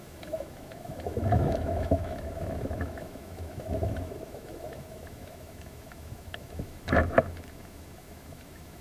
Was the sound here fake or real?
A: fake